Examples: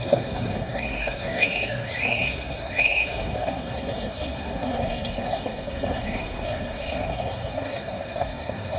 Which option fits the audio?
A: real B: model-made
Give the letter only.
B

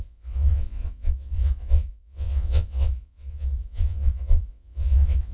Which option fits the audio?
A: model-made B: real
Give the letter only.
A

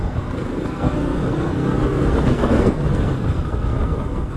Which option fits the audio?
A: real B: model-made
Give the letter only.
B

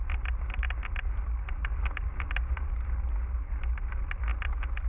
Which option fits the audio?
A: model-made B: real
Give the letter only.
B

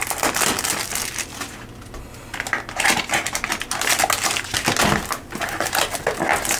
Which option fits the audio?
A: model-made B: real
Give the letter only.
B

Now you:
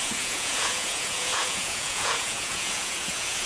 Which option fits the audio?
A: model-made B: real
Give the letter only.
A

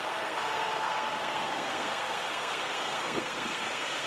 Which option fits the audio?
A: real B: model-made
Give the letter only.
B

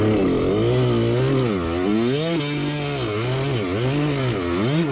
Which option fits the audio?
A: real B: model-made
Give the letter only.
A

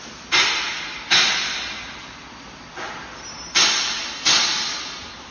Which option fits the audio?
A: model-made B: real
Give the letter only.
B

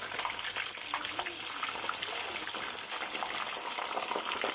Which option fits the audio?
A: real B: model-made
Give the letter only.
A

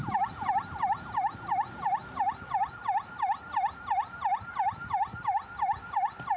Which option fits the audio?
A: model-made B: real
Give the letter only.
B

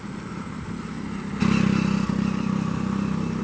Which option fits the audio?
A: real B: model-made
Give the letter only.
A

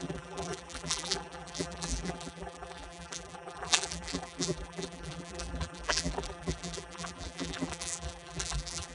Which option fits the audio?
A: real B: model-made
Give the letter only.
B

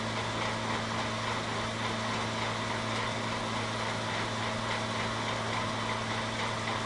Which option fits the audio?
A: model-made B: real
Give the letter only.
B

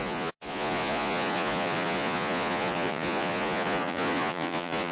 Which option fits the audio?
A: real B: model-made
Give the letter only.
B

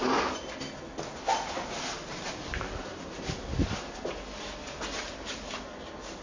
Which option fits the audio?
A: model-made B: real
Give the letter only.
B